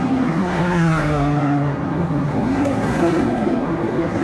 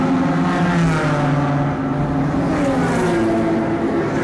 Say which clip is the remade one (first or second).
first